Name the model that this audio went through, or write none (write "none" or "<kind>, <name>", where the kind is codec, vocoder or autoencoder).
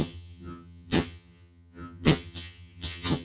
vocoder, HiFi-GAN